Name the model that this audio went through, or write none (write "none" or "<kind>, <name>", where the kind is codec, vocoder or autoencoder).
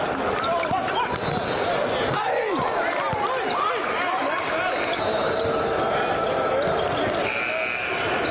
none